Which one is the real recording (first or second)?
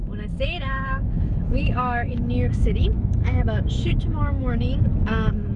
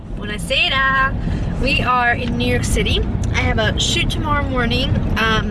second